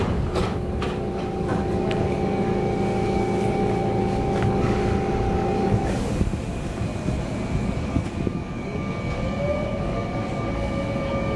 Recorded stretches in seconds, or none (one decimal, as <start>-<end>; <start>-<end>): 6.9-7.6